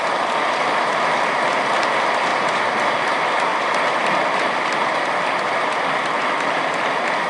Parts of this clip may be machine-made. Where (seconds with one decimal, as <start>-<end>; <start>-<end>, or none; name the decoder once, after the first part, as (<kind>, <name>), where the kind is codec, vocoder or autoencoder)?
none